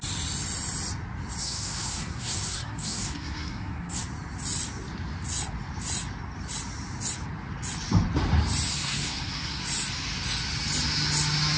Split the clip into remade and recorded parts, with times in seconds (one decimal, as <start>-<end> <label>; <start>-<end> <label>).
0.0-1.4 recorded; 1.4-4.0 remade; 4.0-8.7 recorded; 8.7-9.6 remade; 9.6-11.6 recorded